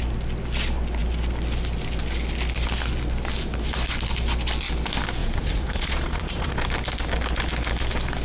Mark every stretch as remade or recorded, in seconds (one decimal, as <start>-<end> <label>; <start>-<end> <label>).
0.0-5.2 recorded; 5.2-6.5 remade; 6.5-8.2 recorded